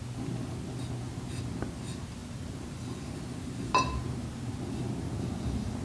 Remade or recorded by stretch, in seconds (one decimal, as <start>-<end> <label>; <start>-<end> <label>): 0.0-5.8 recorded